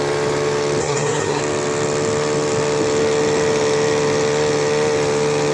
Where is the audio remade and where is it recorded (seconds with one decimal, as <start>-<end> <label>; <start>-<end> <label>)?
0.0-0.8 recorded; 0.8-1.4 remade; 1.4-5.5 recorded